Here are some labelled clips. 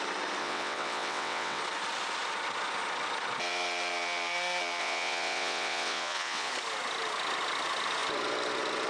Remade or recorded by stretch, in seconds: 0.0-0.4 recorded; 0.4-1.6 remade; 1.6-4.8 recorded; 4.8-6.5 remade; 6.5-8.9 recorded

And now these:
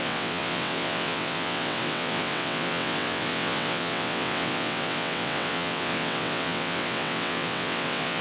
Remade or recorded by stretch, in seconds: 0.0-8.2 remade

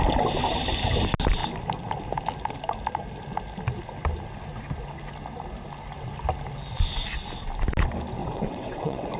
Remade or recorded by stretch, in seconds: 0.0-8.2 recorded; 8.2-9.2 remade